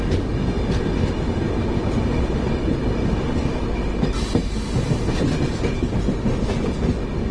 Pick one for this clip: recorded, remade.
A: recorded